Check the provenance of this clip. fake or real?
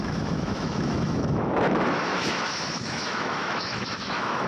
fake